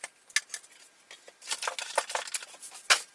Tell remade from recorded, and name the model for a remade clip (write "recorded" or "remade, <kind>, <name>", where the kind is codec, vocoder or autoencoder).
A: recorded